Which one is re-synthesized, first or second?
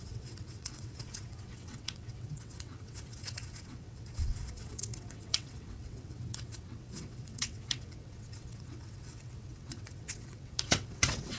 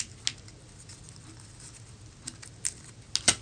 first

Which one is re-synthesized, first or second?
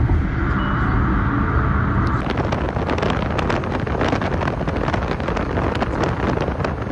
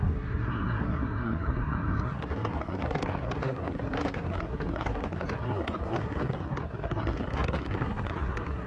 second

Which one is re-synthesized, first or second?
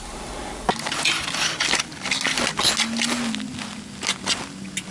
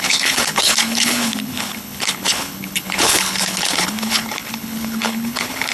second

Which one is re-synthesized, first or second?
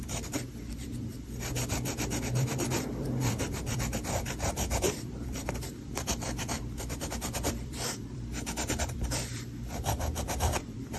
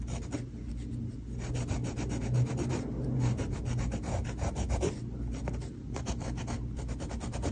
first